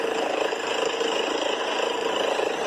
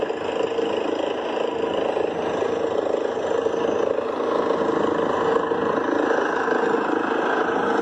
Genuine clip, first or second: second